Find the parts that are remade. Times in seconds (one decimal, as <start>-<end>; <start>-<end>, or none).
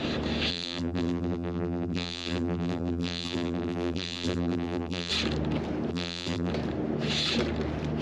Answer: 0.5-5.1; 5.9-6.5